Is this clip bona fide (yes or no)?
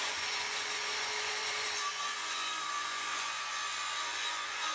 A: no